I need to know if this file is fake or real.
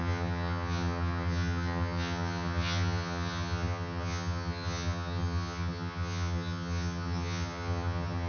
fake